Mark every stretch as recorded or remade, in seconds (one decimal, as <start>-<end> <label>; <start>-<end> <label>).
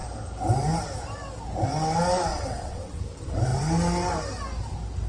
0.0-2.3 recorded; 2.3-3.0 remade; 3.0-5.1 recorded